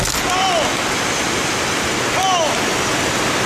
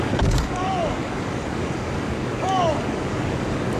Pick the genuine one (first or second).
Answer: first